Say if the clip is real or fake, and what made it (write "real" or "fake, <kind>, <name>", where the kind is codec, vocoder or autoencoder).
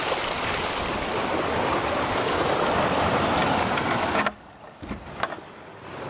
real